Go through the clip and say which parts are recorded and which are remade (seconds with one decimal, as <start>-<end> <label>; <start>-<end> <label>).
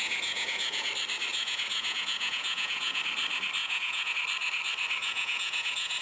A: 0.0-0.9 remade; 0.9-1.3 recorded; 1.3-3.0 remade; 3.0-3.6 recorded; 3.6-4.1 remade; 4.1-5.0 recorded; 5.0-6.0 remade